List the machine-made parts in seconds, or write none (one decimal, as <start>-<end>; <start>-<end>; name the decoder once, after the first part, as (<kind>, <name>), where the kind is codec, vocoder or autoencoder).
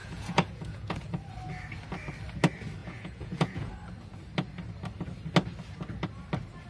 0.0-1.1 (vocoder, Vocos); 2.8-3.7